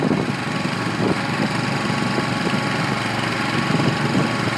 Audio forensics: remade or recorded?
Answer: recorded